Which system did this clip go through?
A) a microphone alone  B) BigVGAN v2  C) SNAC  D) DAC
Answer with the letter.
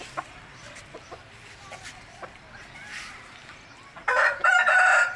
B